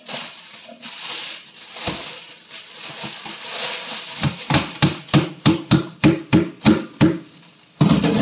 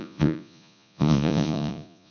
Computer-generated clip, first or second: second